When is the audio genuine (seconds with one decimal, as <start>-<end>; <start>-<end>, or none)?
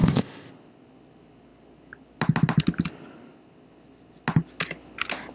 0.5-5.3